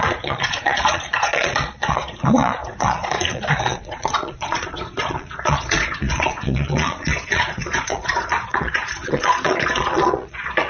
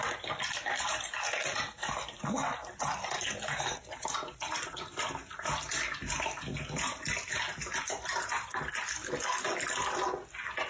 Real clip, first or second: second